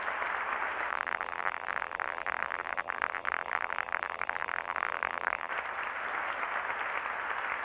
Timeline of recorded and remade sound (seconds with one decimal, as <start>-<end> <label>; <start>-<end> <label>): 0.0-0.9 recorded; 0.9-5.5 remade; 5.5-7.6 recorded

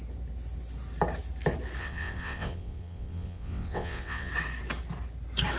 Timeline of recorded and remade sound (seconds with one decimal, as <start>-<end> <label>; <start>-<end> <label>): 0.0-1.8 recorded; 1.8-4.3 remade; 4.3-5.6 recorded

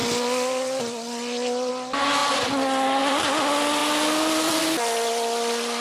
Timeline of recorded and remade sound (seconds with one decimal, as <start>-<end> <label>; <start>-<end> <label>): 0.0-1.7 remade; 1.7-5.8 recorded

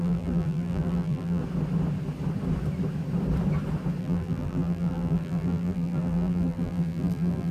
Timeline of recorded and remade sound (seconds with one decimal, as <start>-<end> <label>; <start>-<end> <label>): 0.0-1.4 remade; 1.4-4.0 recorded; 4.0-7.5 remade

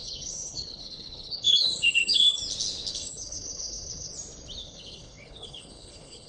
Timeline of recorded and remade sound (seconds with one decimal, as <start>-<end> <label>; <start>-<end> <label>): 0.0-2.4 remade; 2.4-2.9 recorded; 2.9-4.1 remade; 4.1-4.6 recorded; 4.6-6.3 remade

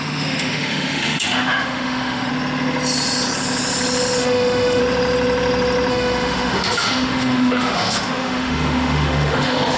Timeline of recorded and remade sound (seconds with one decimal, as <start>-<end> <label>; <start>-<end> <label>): 0.0-2.3 remade; 2.3-4.2 recorded; 4.2-4.8 remade; 4.8-5.9 recorded; 5.9-9.8 remade

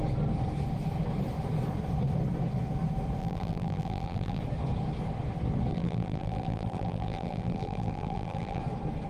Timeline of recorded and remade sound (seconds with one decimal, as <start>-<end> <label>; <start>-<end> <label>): 0.0-3.2 recorded; 3.2-4.4 remade; 4.4-5.7 recorded; 5.7-8.6 remade; 8.6-9.1 recorded